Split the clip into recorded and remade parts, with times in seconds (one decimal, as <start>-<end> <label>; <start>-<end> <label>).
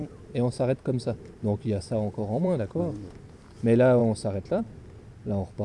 0.0-2.8 remade; 2.8-4.0 recorded; 4.0-4.6 remade; 4.6-5.6 recorded